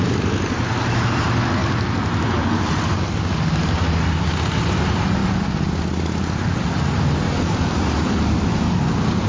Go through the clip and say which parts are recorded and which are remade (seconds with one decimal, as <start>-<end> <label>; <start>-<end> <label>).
0.0-9.3 recorded